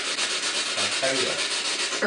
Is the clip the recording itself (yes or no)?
yes